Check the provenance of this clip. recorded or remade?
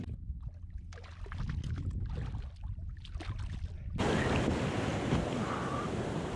recorded